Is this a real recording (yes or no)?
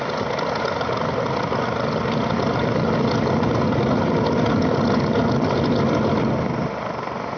yes